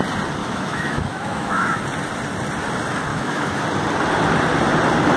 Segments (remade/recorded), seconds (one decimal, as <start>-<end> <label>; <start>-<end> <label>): 0.0-0.4 recorded; 0.4-1.8 remade; 1.8-3.1 recorded; 3.1-3.6 remade; 3.6-5.2 recorded